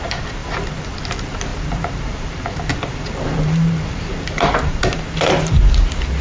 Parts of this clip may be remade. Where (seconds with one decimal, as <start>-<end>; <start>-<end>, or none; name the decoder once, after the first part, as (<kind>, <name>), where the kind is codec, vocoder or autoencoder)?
0.0-0.4 (vocoder, BigVGAN v2); 1.0-6.2